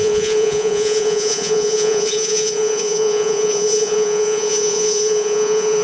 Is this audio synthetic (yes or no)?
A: yes